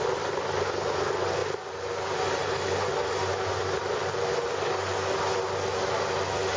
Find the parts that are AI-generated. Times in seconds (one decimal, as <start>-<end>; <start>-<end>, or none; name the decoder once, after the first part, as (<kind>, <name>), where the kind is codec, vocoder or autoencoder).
none